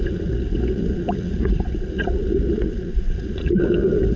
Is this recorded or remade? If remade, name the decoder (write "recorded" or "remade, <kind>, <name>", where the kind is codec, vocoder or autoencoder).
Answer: remade, vocoder, Vocos